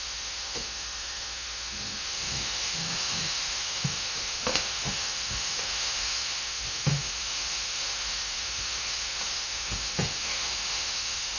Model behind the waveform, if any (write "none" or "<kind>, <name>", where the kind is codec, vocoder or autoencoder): autoencoder, DAC-VAE